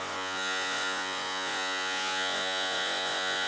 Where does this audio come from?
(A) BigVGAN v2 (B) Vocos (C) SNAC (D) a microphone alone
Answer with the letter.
B